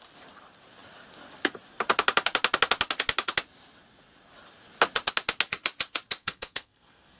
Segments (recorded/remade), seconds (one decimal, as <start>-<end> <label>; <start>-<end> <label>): 0.0-6.2 recorded; 6.2-7.2 remade